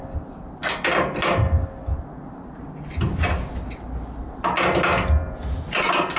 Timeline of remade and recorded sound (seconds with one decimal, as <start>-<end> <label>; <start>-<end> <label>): 0.0-6.2 recorded